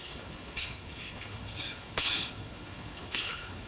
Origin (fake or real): fake